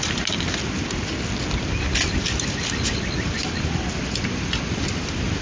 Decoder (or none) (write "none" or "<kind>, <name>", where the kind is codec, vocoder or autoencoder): none